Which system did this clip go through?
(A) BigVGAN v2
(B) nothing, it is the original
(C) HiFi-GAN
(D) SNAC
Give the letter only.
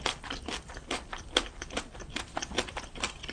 A